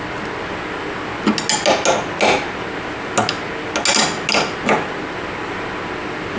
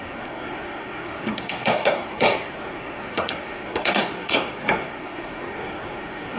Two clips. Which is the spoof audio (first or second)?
second